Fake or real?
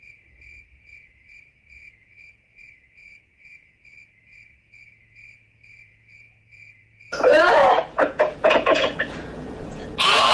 fake